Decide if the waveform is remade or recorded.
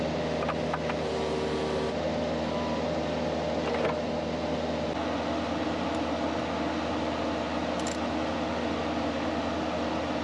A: recorded